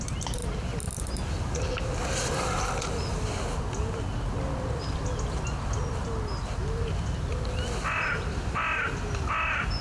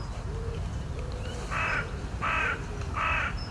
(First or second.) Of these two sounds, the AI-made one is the second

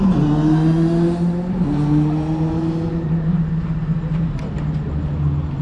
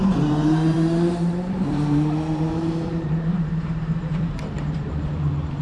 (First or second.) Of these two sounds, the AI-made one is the second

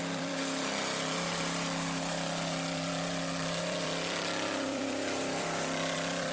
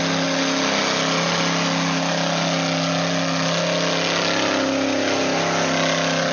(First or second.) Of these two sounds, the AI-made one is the first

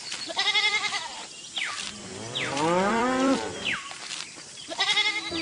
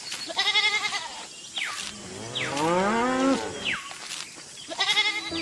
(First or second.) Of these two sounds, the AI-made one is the first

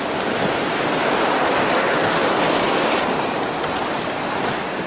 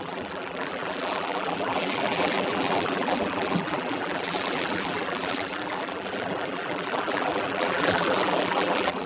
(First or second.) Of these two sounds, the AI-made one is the second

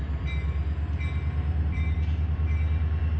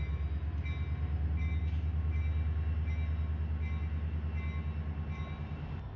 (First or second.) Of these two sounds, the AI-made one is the first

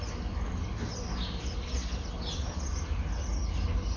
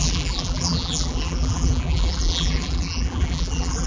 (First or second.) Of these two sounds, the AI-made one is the second